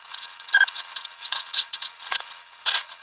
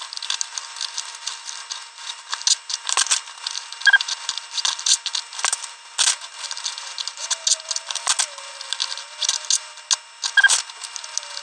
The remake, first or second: first